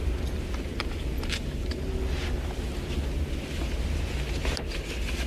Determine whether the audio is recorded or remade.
recorded